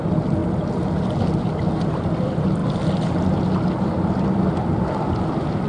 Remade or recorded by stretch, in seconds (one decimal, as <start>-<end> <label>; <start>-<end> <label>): 0.0-5.7 recorded

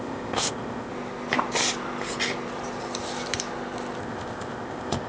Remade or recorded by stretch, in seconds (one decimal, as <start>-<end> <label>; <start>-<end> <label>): 0.0-0.9 remade; 0.9-4.0 recorded; 4.0-5.1 remade

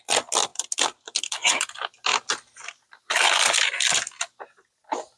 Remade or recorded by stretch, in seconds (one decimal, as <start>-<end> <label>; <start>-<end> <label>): 0.0-5.2 recorded